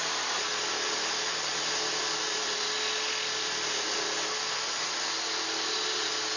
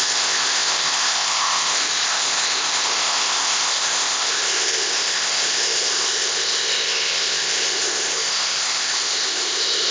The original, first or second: first